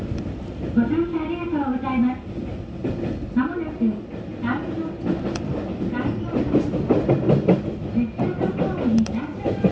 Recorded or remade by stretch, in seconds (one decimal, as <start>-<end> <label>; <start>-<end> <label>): 0.0-9.7 recorded